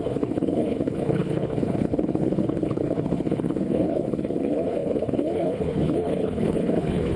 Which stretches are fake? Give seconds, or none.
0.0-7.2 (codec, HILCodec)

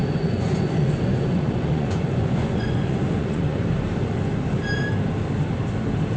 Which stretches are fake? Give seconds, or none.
0.0-3.6 (vocoder, Vocos)

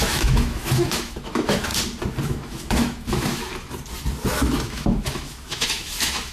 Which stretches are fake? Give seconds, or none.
0.0-1.7 (autoencoder, DAC-VAE); 2.2-3.5; 4.4-6.3

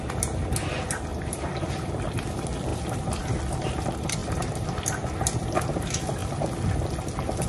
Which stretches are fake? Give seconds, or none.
1.1-1.9 (vocoder, BigVGAN v2); 2.7-3.2; 4.2-5.5; 6.2-7.5

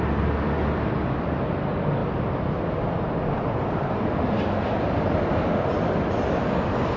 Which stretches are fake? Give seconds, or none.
none